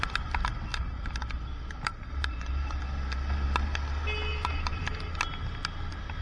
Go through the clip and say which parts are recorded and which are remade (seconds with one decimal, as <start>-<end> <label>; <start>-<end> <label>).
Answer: 0.0-0.7 recorded; 0.7-2.8 remade; 2.8-4.3 recorded; 4.3-5.0 remade; 5.0-6.2 recorded